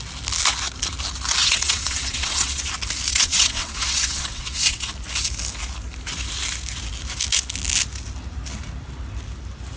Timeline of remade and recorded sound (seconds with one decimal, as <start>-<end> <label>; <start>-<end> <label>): 0.0-1.4 recorded; 1.4-2.7 remade; 2.7-3.1 recorded; 3.1-4.9 remade; 4.9-9.8 recorded